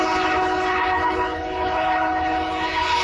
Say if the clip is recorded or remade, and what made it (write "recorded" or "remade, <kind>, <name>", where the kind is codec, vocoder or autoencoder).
remade, codec, HILCodec